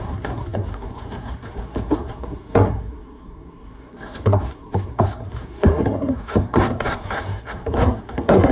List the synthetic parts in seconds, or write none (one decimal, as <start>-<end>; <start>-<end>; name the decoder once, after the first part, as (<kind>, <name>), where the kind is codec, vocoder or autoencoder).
0.0-8.5 (codec, SNAC)